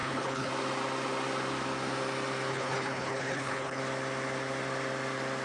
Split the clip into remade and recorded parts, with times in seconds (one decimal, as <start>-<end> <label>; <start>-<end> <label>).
0.0-0.5 remade; 0.5-2.5 recorded; 2.5-3.8 remade; 3.8-5.4 recorded